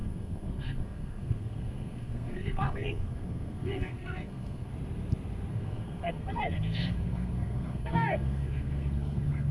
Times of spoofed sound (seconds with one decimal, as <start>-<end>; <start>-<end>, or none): 0.0-4.7; 5.5-9.5

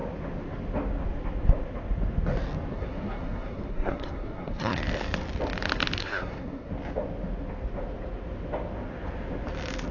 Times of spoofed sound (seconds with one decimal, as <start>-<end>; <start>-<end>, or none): 2.7-4.8; 6.0-6.7

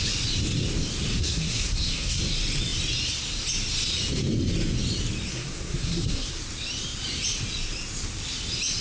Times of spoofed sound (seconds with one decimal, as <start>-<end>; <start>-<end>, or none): 1.2-2.2; 5.3-6.4

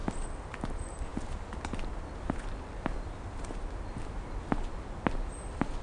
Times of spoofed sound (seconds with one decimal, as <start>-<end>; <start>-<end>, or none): none

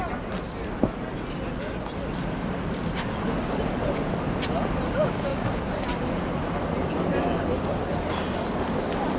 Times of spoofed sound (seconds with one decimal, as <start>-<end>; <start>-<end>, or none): none

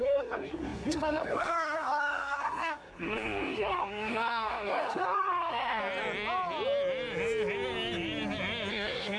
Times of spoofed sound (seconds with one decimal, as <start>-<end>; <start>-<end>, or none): 0.0-5.8; 8.7-9.2

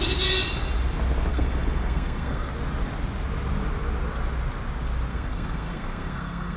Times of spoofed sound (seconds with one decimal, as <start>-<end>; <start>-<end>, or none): 1.3-2.5; 5.1-6.6

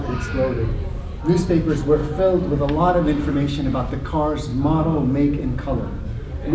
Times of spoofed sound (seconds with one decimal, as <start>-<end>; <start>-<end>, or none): none